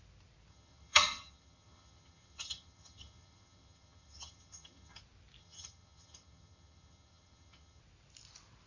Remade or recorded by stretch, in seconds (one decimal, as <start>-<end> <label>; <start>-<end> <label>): 0.0-0.5 recorded; 0.5-5.0 remade; 5.0-5.4 recorded; 5.4-7.8 remade; 7.8-8.7 recorded